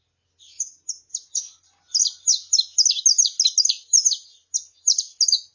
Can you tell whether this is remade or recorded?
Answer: recorded